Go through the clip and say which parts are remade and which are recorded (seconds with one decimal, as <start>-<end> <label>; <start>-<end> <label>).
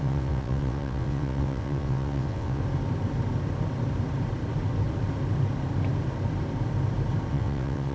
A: 0.0-2.6 remade; 2.6-7.3 recorded; 7.3-7.9 remade